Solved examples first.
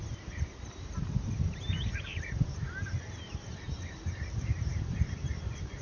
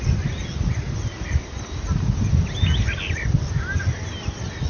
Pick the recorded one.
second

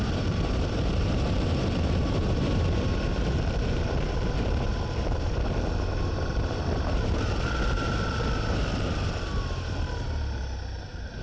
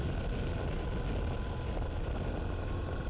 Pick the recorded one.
second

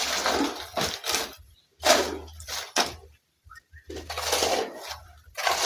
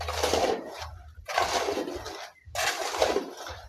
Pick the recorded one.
first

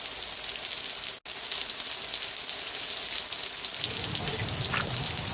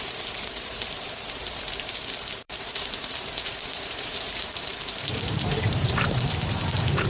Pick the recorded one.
first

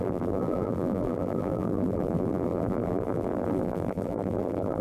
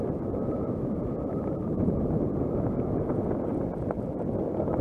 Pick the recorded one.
second